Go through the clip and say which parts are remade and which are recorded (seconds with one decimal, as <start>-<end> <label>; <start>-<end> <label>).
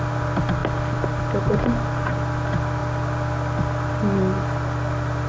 0.0-5.3 recorded